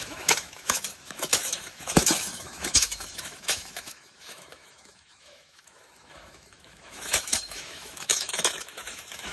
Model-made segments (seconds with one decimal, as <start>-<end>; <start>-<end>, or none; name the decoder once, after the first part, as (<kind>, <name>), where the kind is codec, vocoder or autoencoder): 0.0-9.3 (autoencoder, DAC-VAE)

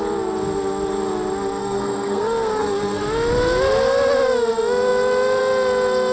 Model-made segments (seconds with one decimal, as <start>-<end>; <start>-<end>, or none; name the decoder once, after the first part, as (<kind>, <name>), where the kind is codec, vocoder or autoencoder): 1.6-3.0 (codec, SNAC)